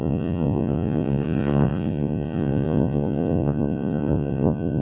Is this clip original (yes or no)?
no